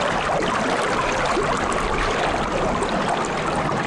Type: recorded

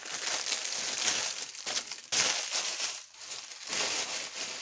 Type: recorded